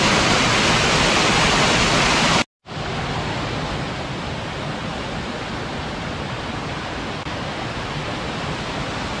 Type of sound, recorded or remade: recorded